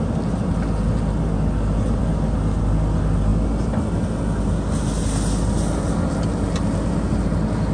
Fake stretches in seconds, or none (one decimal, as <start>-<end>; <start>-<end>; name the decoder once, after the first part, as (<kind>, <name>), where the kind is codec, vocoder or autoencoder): none